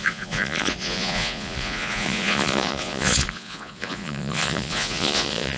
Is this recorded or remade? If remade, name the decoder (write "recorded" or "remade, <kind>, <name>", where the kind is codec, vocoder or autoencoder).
remade, vocoder, Vocos